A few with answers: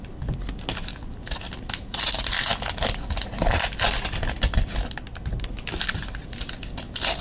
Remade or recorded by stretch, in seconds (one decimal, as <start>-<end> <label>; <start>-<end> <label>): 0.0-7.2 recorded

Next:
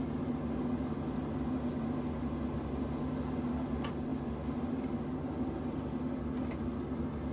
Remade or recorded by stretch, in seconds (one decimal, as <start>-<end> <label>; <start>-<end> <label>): 0.0-7.3 recorded

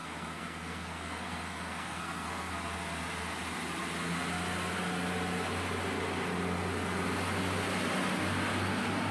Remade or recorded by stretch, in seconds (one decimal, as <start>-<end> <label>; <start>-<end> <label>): 0.0-2.5 remade; 2.5-9.1 recorded

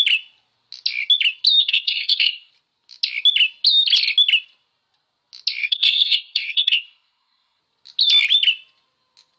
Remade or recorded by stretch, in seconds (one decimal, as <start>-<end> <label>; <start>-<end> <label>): 0.0-1.6 recorded; 1.6-2.5 remade; 2.5-5.6 recorded; 5.6-7.6 remade; 7.6-9.4 recorded

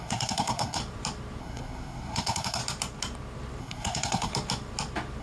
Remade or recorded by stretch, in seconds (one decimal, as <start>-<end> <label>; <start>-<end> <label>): 0.0-0.8 remade; 0.8-1.4 recorded; 1.4-2.6 remade; 2.6-3.6 recorded; 3.6-4.3 remade; 4.3-5.2 recorded

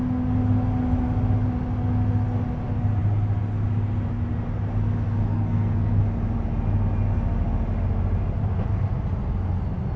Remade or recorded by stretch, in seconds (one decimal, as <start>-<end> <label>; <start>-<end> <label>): 0.0-5.3 recorded; 5.3-6.0 remade; 6.0-10.0 recorded

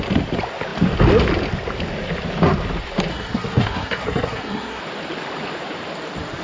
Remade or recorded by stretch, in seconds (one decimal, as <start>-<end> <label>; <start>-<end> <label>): 0.0-3.1 recorded; 3.1-4.8 remade; 4.8-6.4 recorded

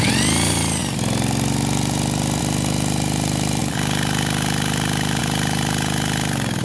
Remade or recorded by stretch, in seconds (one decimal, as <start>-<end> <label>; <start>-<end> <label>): 0.0-6.6 recorded